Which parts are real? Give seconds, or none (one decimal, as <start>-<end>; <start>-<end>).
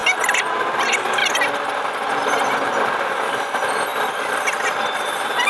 1.2-2.9